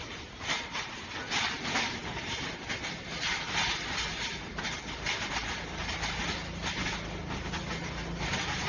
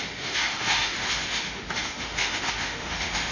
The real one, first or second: first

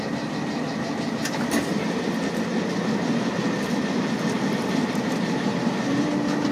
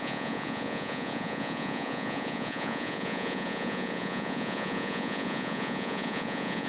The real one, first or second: first